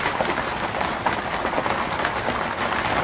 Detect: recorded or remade recorded